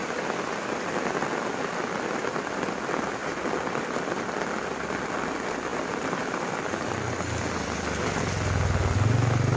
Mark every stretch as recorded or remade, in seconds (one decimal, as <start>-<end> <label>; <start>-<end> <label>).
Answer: 0.0-3.2 recorded; 3.2-5.0 remade; 5.0-5.7 recorded; 5.7-8.2 remade; 8.2-9.6 recorded